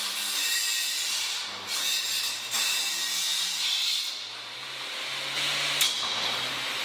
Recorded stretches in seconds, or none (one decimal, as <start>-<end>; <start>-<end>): 0.0-6.8